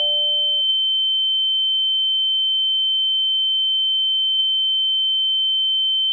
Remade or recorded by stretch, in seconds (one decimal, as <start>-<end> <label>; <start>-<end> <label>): 0.0-0.7 recorded; 0.7-4.4 remade; 4.4-6.1 recorded

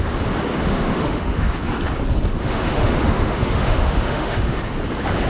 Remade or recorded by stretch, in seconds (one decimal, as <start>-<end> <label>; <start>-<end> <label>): 0.0-0.5 recorded; 0.5-1.5 remade; 1.5-2.3 recorded; 2.3-4.6 remade; 4.6-5.3 recorded

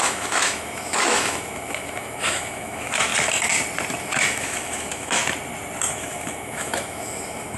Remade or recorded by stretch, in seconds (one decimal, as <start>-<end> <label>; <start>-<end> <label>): 0.0-3.1 remade; 3.1-4.0 recorded; 4.0-5.2 remade; 5.2-5.9 recorded; 5.9-7.6 remade

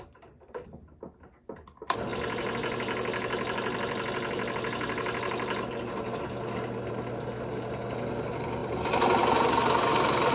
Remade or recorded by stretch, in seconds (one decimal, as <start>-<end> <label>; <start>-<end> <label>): 0.0-10.3 recorded

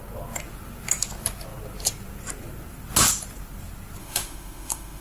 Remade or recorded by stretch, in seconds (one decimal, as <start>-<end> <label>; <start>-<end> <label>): 0.0-4.0 recorded; 4.0-5.0 remade